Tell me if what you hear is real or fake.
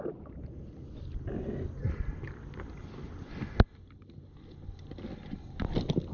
real